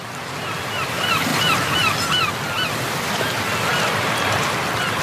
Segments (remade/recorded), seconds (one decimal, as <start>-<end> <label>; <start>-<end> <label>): 0.0-5.0 recorded